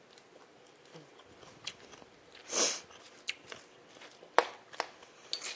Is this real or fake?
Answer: real